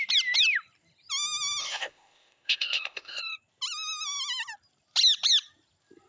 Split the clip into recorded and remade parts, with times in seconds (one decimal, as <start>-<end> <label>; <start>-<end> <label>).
0.0-1.6 recorded; 1.6-3.2 remade; 3.2-6.1 recorded